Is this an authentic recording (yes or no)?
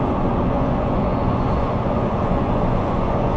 no